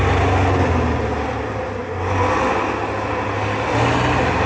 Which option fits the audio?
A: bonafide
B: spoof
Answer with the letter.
A